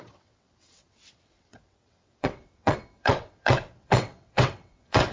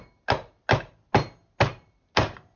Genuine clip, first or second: second